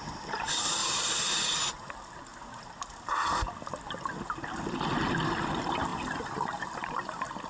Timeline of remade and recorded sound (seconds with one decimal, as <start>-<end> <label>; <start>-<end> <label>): 0.0-0.8 recorded; 0.8-1.7 remade; 1.7-2.3 recorded; 2.3-3.3 remade; 3.3-7.5 recorded